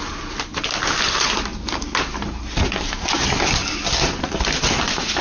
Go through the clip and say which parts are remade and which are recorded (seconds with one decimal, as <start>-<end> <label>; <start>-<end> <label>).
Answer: 0.0-0.5 remade; 0.5-1.1 recorded; 1.1-1.5 remade; 1.5-4.2 recorded; 4.2-5.2 remade